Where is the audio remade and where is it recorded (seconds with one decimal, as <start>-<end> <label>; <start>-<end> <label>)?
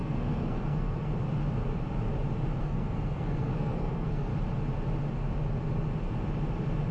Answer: 0.0-1.1 remade; 1.1-2.6 recorded; 2.6-4.3 remade; 4.3-6.9 recorded